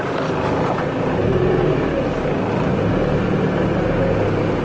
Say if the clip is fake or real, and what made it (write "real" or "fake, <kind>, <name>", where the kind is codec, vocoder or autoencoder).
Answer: real